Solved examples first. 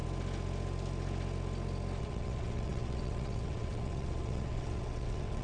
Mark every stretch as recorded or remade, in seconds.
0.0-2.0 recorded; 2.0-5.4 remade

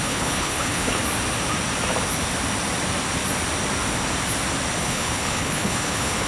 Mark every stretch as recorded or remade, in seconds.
0.0-1.0 remade; 1.0-4.8 recorded; 4.8-6.3 remade

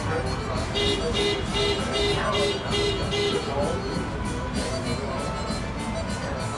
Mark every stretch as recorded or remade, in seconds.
0.0-6.6 recorded

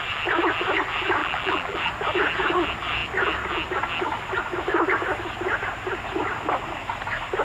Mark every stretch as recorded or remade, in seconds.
0.0-1.2 recorded; 1.2-1.8 remade; 1.8-7.4 recorded

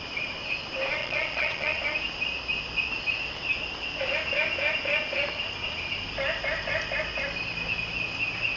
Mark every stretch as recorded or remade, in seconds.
0.0-1.0 recorded; 1.0-1.8 remade; 1.8-8.6 recorded

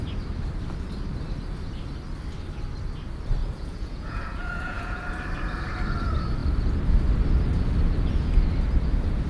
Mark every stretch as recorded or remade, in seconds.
0.0-3.4 recorded; 3.4-5.1 remade; 5.1-9.3 recorded